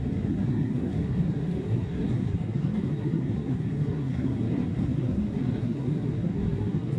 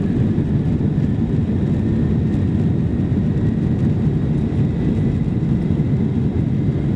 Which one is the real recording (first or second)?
second